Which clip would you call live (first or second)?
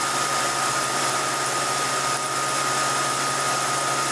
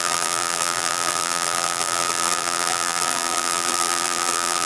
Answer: first